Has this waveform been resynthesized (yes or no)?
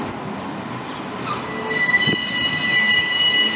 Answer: no